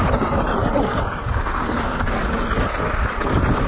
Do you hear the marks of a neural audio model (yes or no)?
no